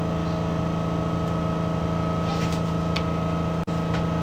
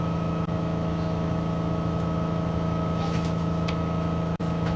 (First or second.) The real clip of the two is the first